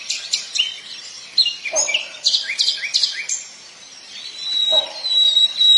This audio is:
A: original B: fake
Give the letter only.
B